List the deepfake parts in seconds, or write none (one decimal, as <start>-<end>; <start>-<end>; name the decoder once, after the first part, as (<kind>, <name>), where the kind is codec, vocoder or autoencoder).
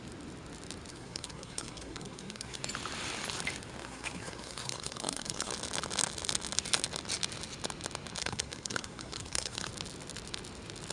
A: 0.9-2.6 (codec, SNAC); 3.8-5.5; 8.2-9.7